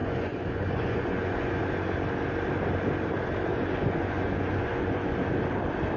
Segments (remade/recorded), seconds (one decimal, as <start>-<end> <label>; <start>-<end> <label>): 0.0-1.6 remade; 1.6-3.5 recorded; 3.5-5.2 remade; 5.2-6.0 recorded